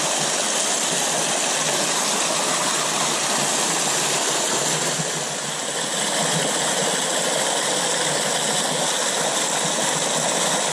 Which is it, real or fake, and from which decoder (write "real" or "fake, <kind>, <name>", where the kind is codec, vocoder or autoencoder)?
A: real